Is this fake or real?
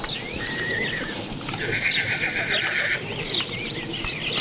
fake